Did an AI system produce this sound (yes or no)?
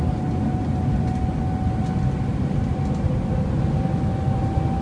no